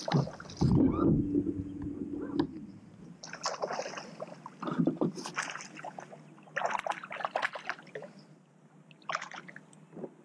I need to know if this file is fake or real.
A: real